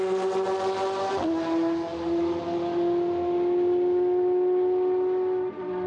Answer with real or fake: real